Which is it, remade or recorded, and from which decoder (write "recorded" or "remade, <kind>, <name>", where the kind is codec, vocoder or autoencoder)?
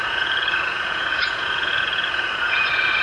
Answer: remade, vocoder, Vocos